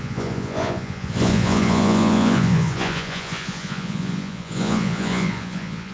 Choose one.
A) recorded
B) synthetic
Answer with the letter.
B